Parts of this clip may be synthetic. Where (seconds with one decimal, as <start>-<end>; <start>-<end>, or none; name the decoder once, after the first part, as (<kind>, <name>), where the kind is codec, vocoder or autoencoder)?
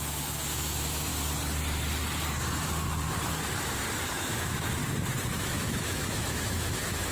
0.0-1.1 (autoencoder, DAC-VAE); 4.1-4.8; 5.4-7.1